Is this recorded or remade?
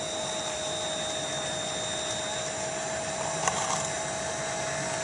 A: recorded